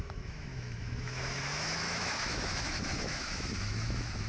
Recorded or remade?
remade